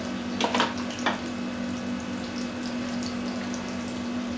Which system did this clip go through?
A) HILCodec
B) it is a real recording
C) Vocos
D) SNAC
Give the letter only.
B